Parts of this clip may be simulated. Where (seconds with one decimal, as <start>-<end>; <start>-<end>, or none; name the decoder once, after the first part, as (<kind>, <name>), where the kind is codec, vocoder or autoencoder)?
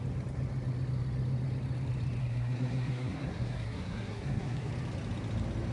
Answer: 2.2-4.7 (codec, SNAC)